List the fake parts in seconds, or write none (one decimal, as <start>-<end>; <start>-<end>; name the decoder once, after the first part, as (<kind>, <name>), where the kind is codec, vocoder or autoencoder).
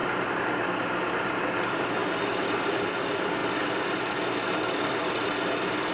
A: 0.0-2.0 (vocoder, BigVGAN v2); 2.7-3.4